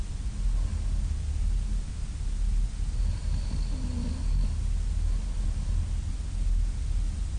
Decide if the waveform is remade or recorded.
recorded